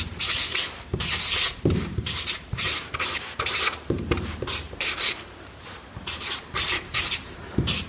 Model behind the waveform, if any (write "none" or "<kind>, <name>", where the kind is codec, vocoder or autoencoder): vocoder, BigVGAN v2